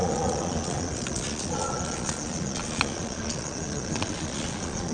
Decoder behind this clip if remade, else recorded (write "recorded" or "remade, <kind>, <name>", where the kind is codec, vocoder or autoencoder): remade, vocoder, Vocos